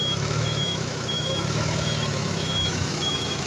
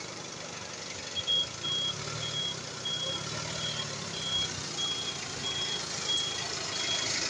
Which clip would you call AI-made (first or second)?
first